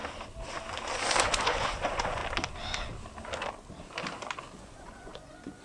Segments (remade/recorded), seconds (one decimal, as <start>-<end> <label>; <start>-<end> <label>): 0.0-1.2 recorded; 1.2-2.2 remade; 2.2-4.4 recorded; 4.4-5.6 remade

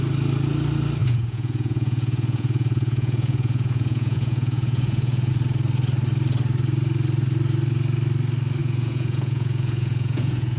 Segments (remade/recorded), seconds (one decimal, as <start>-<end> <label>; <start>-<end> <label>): 0.0-1.0 recorded; 1.0-5.3 remade; 5.3-8.6 recorded; 8.6-10.6 remade

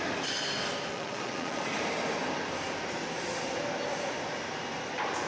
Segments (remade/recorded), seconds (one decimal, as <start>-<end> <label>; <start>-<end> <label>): 0.0-0.9 recorded; 0.9-1.6 remade; 1.6-5.3 recorded

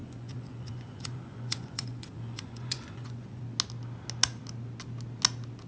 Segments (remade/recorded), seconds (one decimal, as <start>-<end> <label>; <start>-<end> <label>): 0.0-3.4 remade; 3.4-5.7 recorded

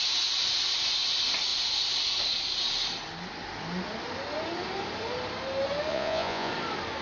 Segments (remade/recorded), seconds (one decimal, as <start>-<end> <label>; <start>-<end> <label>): 0.0-5.9 recorded; 5.9-6.5 remade; 6.5-7.0 recorded

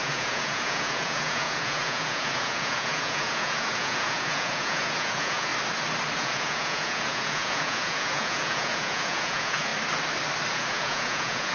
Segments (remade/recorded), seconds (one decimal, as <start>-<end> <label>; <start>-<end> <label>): 0.0-5.5 remade; 5.5-6.1 recorded; 6.1-9.7 remade; 9.7-10.5 recorded; 10.5-11.5 remade

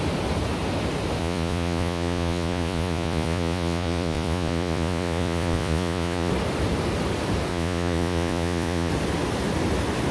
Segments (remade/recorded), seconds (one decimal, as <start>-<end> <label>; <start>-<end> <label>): 0.0-1.2 recorded; 1.2-6.3 remade; 6.3-7.5 recorded; 7.5-8.9 remade; 8.9-10.1 recorded

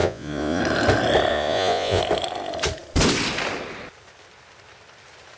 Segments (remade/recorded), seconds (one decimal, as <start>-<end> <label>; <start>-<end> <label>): 0.0-0.6 remade; 0.6-1.3 recorded; 1.3-2.0 remade; 2.0-5.4 recorded